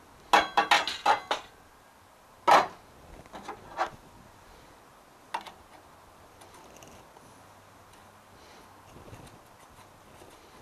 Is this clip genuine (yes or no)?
yes